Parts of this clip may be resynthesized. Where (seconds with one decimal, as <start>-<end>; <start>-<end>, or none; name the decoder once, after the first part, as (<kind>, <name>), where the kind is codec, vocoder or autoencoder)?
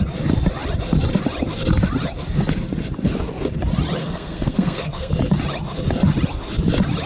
4.0-5.1 (codec, SNAC)